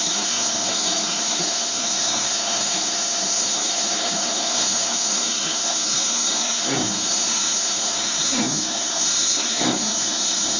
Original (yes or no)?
no